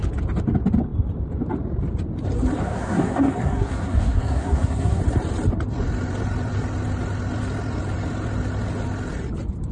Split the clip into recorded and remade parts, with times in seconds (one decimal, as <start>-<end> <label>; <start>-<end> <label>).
0.0-2.6 recorded; 2.6-5.0 remade; 5.0-9.7 recorded